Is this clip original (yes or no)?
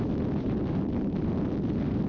yes